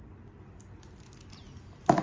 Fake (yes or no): no